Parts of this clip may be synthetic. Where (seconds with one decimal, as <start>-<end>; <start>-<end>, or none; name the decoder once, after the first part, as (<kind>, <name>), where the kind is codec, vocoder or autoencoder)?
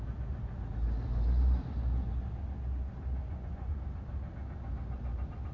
3.2-3.8 (vocoder, Vocos)